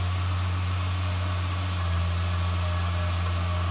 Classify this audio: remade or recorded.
recorded